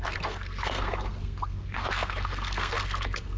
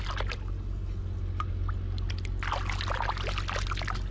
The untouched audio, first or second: second